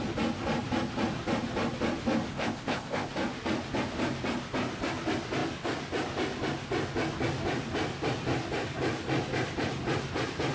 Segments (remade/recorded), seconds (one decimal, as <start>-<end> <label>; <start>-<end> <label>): 0.0-2.3 recorded; 2.3-3.1 remade; 3.1-10.5 recorded